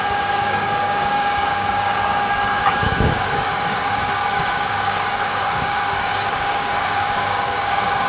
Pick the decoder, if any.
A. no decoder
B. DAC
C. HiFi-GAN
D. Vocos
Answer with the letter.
B